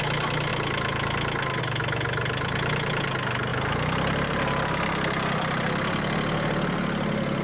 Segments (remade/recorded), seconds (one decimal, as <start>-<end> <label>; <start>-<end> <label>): 0.0-7.4 recorded